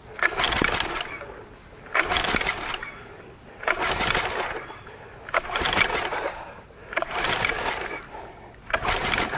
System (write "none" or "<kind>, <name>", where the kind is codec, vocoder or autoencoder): none